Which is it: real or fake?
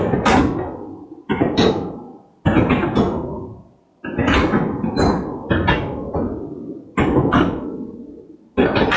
real